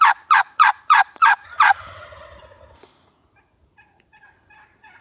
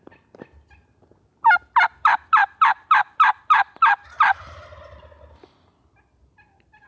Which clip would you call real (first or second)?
second